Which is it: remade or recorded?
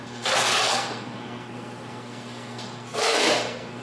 remade